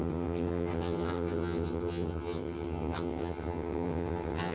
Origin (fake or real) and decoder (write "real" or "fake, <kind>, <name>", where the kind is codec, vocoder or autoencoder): fake, vocoder, HiFi-GAN